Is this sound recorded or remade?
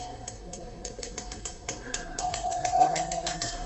remade